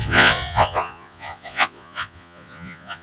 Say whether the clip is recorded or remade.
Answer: remade